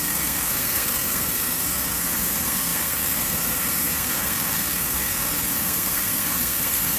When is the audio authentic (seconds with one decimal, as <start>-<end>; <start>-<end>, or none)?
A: none

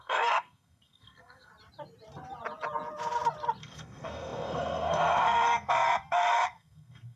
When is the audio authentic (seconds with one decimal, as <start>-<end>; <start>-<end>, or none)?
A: 1.5-3.6

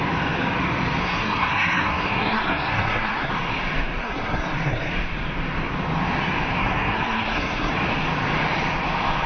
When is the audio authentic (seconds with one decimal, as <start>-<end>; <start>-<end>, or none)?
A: 0.0-1.0; 3.3-4.0; 4.9-6.6; 7.7-9.3

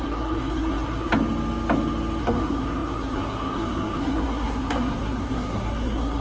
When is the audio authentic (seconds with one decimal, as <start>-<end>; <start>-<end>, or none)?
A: 1.1-2.2

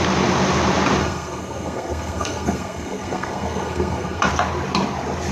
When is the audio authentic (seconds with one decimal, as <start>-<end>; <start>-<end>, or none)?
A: 0.0-1.0; 4.2-5.3

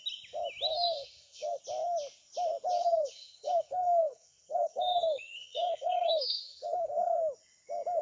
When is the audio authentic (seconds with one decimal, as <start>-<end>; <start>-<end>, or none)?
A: 0.0-0.7; 1.6-2.8; 7.2-8.0

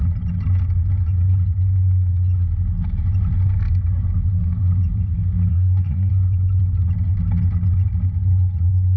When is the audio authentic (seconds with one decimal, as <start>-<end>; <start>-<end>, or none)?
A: 0.0-5.5; 6.1-9.0